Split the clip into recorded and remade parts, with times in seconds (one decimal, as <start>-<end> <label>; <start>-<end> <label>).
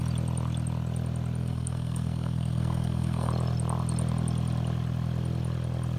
0.0-1.4 recorded; 1.4-3.3 remade; 3.3-6.0 recorded